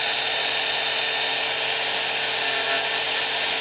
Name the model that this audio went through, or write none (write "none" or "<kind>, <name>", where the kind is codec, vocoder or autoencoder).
none